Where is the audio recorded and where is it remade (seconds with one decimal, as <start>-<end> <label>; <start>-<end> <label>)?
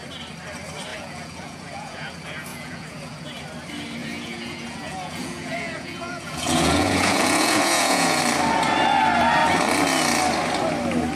0.0-0.9 recorded; 0.9-2.1 remade; 2.1-2.5 recorded; 2.5-3.4 remade; 3.4-4.0 recorded; 4.0-8.2 remade; 8.2-11.1 recorded